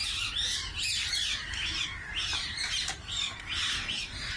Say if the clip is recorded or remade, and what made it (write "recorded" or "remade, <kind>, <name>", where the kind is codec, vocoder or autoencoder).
remade, vocoder, BigVGAN v2